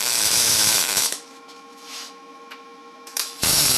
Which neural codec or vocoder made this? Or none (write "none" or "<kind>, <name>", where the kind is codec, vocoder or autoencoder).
autoencoder, DAC-VAE